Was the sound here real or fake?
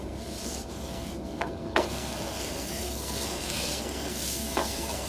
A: fake